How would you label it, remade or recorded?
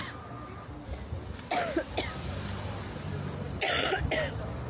recorded